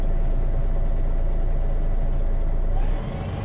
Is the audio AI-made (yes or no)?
no